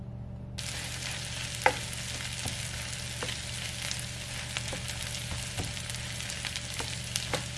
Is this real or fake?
real